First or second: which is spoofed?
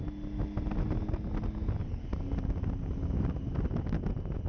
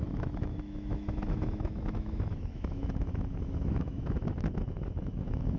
second